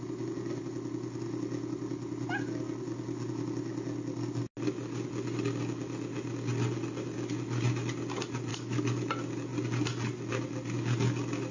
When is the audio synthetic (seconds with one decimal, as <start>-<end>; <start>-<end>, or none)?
8.5-9.1

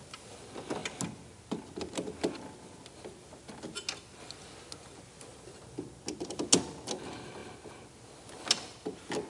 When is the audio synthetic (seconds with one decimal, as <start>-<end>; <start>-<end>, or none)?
none

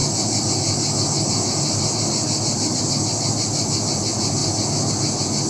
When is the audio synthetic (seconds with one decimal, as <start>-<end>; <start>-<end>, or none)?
none

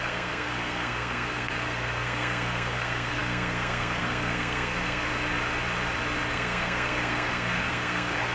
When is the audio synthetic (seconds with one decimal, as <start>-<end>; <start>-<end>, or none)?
0.0-5.1; 6.3-8.3

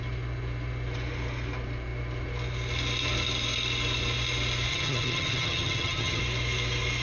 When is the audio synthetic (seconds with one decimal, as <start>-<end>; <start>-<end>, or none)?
4.7-6.2

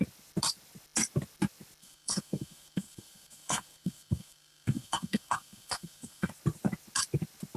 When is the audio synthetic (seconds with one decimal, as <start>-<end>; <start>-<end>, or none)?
1.8-6.3

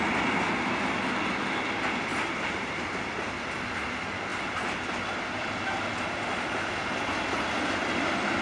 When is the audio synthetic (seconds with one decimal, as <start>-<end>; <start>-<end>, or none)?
2.1-3.0; 4.3-4.9

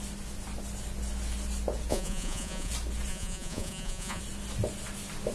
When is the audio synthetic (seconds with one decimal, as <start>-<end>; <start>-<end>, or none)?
1.9-2.7; 3.1-4.2